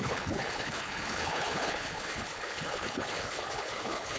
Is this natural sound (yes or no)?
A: no